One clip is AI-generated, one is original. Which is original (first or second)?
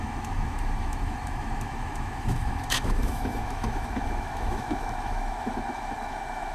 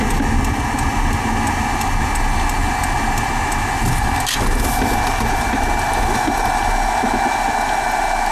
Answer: second